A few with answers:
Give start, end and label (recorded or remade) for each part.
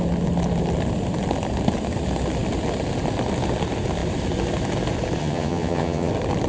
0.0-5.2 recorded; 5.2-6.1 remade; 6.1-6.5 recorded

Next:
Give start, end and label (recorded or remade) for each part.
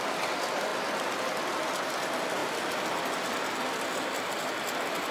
0.0-5.1 recorded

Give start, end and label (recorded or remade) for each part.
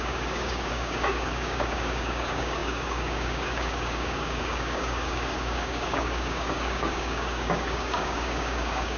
0.0-9.0 remade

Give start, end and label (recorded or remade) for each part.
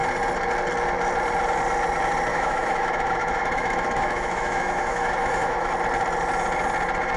0.0-2.3 recorded; 2.3-5.7 remade; 5.7-7.2 recorded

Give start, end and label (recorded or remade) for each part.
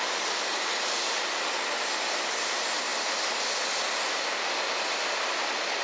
0.0-5.8 recorded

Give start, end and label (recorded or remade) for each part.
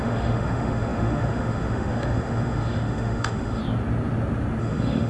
0.0-3.6 remade; 3.6-4.6 recorded; 4.6-5.1 remade